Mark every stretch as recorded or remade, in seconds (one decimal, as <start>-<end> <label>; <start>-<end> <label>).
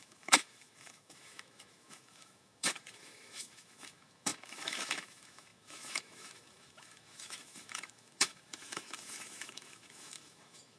0.0-10.8 remade